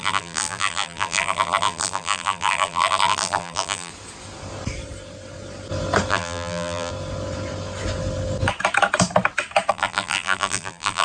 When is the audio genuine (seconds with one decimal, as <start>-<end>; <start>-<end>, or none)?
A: 3.9-6.1; 6.9-9.7